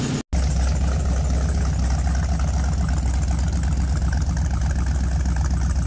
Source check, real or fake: real